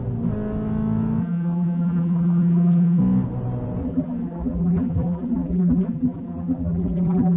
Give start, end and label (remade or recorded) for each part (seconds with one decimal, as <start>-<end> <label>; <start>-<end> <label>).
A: 0.0-1.2 recorded; 1.2-3.0 remade; 3.0-3.8 recorded; 3.8-7.4 remade